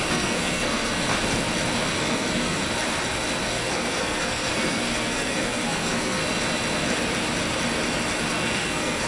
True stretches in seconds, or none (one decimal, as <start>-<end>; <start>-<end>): 1.1-1.8; 2.6-3.4; 6.2-8.3